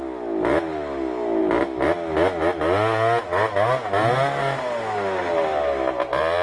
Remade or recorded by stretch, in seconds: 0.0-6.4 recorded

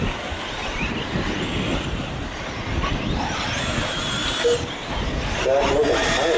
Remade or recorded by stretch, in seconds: 0.0-6.4 recorded

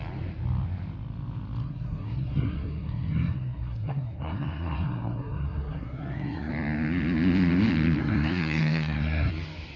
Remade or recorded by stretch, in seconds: 0.0-1.6 recorded; 1.6-6.5 remade; 6.5-8.0 recorded; 8.0-9.3 remade; 9.3-9.8 recorded

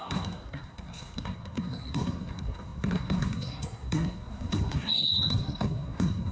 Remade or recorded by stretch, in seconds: 0.0-6.3 remade

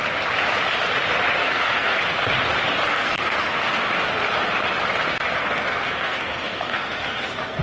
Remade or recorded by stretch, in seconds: 0.0-1.4 recorded; 1.4-2.0 remade; 2.0-2.9 recorded; 2.9-3.8 remade; 3.8-5.4 recorded; 5.4-7.6 remade